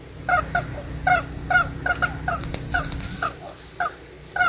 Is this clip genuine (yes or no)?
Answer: yes